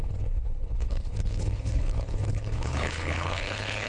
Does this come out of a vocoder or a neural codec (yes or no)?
yes